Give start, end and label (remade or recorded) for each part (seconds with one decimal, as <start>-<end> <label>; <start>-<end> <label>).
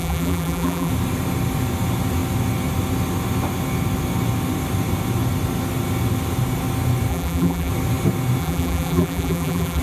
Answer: 0.0-0.9 remade; 0.9-7.1 recorded; 7.1-7.7 remade; 7.7-8.4 recorded; 8.4-9.8 remade